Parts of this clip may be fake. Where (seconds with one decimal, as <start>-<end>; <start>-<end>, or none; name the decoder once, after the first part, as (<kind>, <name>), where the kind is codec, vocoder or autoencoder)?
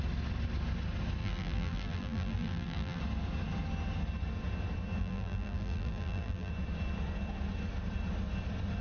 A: 1.2-3.0 (vocoder, BigVGAN v2); 5.0-6.5